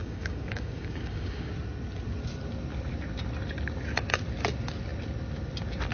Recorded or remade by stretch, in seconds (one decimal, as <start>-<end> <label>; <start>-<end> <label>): 0.0-1.5 remade; 1.5-5.9 recorded